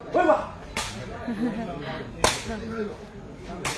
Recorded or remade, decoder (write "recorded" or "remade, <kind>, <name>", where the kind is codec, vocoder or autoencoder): recorded